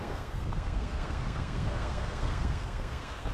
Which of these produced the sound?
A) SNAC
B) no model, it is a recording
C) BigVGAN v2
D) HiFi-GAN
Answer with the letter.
A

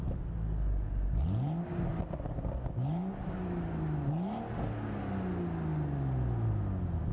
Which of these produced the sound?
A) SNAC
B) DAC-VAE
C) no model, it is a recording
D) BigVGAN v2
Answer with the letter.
C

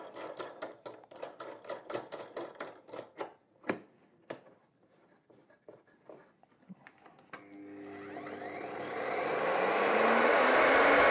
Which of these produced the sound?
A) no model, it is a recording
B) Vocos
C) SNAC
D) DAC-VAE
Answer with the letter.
A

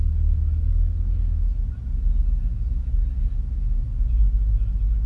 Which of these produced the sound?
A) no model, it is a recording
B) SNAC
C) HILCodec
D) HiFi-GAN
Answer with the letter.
A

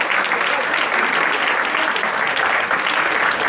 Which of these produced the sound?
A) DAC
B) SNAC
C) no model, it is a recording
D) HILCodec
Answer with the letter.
C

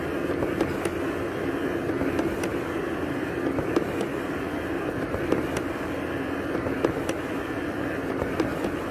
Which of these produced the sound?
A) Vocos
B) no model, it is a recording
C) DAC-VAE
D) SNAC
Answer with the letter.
B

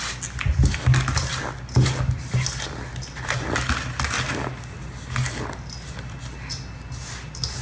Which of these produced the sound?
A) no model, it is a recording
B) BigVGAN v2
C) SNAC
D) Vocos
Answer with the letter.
A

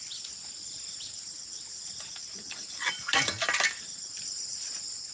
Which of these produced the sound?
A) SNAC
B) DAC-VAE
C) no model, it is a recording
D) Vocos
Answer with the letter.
C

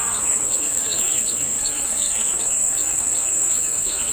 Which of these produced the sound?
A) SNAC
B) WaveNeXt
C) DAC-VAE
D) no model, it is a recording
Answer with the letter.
A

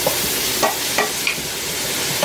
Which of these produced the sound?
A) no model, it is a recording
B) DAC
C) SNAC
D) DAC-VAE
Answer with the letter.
A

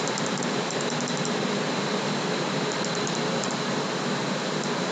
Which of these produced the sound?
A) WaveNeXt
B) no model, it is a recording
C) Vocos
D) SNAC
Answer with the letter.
B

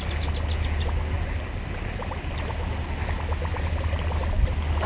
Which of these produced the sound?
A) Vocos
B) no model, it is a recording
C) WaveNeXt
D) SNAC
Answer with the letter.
B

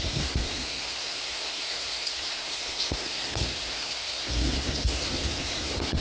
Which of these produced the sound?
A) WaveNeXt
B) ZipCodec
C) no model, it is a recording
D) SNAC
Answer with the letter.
D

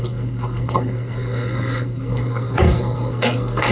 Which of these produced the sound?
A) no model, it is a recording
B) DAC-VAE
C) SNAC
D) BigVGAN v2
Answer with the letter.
C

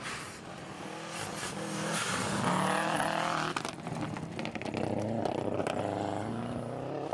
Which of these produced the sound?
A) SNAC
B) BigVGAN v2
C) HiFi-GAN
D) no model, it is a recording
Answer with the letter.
D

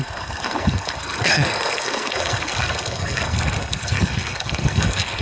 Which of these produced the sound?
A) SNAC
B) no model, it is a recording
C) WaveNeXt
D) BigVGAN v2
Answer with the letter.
A